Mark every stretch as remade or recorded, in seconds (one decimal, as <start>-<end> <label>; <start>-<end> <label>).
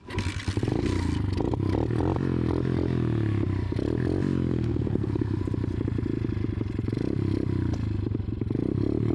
0.0-4.5 recorded; 4.5-5.4 remade; 5.4-9.1 recorded